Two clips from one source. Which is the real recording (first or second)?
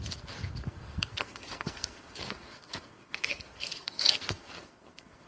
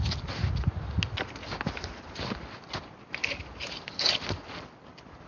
second